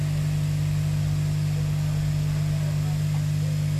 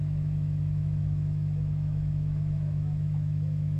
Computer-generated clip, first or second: second